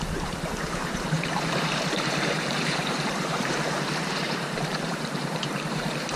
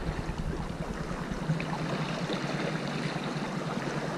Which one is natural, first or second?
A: second